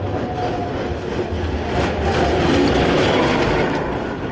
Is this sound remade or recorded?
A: recorded